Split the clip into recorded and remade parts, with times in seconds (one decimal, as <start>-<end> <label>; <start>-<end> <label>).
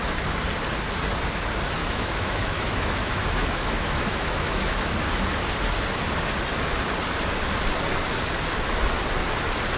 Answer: 0.0-1.8 recorded; 1.8-4.9 remade; 4.9-9.8 recorded